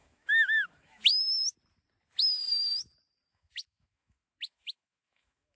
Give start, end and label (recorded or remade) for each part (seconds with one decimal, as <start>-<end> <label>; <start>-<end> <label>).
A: 0.0-1.1 remade; 1.1-3.3 recorded; 3.3-5.6 remade